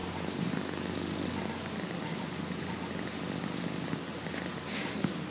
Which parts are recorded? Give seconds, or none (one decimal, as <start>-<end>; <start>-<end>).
0.0-5.3